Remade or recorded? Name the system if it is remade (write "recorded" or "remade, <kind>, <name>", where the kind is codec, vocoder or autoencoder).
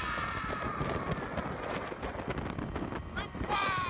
recorded